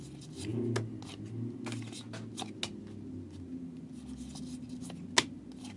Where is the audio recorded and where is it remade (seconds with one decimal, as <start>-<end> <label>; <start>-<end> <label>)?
0.0-5.8 recorded